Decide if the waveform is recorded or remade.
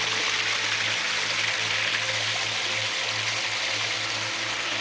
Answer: recorded